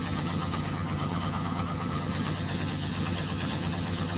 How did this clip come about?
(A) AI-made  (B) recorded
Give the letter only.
A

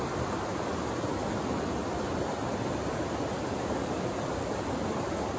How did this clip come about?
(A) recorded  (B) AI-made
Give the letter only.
A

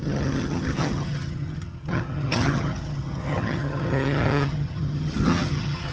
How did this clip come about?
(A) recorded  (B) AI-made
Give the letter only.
B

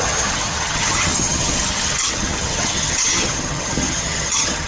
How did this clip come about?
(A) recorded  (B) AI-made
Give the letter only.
B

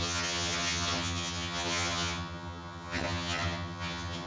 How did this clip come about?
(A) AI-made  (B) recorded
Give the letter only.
A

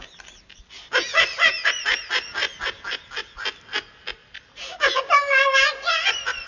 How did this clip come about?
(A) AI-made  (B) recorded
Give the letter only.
B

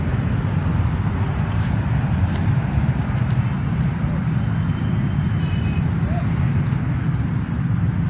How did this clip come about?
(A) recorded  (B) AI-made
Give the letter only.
A